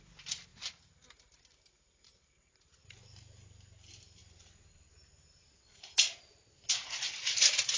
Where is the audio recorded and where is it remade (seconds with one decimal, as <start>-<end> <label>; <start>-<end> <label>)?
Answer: 0.0-7.8 recorded